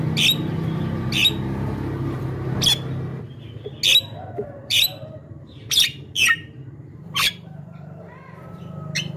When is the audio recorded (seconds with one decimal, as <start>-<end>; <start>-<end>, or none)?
0.0-4.1; 8.7-9.2